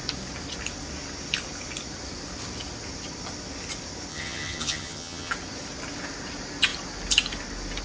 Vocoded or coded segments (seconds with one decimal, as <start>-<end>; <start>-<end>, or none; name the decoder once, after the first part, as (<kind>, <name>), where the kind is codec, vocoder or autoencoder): 4.1-5.3 (vocoder, HiFi-GAN)